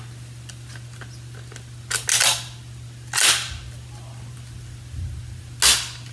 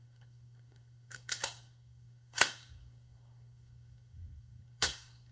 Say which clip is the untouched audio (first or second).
first